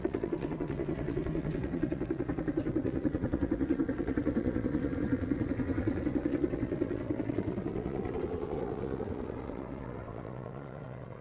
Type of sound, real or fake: fake